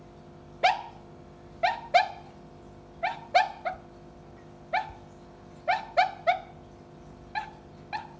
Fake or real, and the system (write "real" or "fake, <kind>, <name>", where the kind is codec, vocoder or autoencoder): real